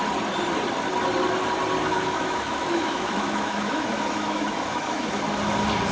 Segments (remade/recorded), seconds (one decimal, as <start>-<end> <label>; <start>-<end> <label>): 0.0-1.8 recorded; 1.8-5.2 remade; 5.2-5.9 recorded